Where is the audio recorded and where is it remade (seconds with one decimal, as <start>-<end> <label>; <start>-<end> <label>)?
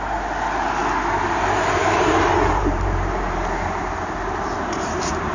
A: 0.0-0.8 remade; 0.8-1.3 recorded; 1.3-5.3 remade